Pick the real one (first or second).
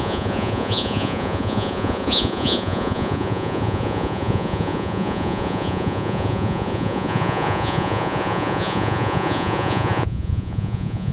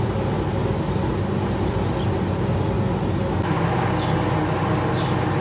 second